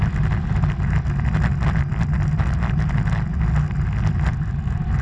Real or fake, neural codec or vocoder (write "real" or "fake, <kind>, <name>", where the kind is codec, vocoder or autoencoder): real